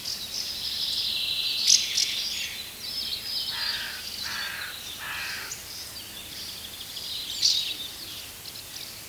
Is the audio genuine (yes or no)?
yes